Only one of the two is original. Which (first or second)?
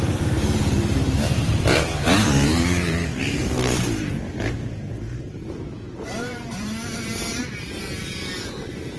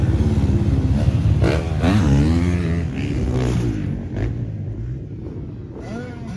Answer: second